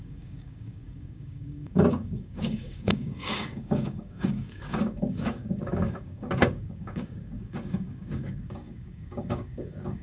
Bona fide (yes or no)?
no